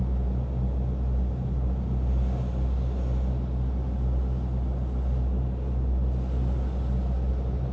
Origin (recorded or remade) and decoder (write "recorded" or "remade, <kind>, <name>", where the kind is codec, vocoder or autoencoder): recorded